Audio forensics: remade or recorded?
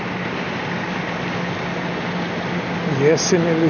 recorded